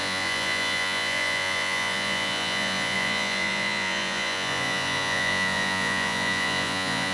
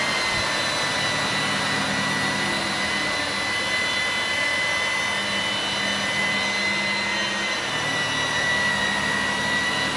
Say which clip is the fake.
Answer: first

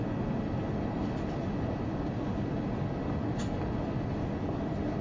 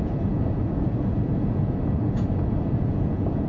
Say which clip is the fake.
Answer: second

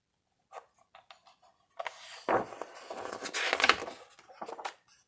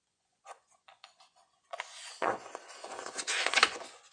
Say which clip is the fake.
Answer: second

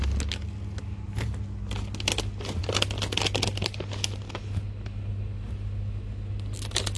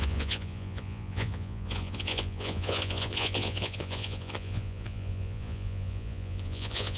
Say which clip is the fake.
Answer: second